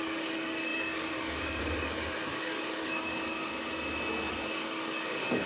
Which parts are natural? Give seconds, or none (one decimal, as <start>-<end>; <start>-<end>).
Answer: 3.5-4.3